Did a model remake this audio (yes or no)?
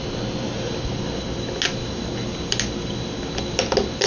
no